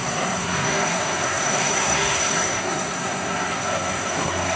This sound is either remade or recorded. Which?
remade